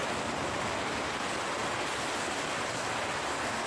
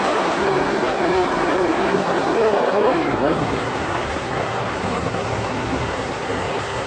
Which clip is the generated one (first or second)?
second